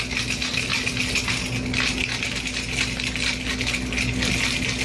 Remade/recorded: recorded